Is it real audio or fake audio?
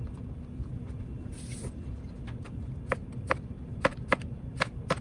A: real